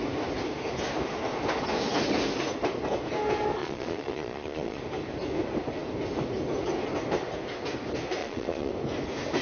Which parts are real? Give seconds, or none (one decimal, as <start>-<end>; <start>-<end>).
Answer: 0.0-3.6; 4.8-8.2; 8.7-9.4